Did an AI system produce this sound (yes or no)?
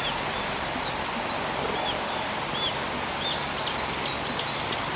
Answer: no